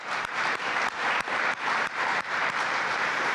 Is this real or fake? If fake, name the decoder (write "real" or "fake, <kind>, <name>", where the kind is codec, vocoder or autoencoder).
fake, vocoder, BigVGAN v2